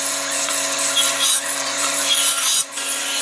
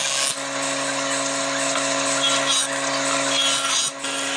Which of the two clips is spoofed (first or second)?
first